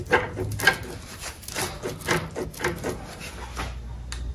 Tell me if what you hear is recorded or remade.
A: recorded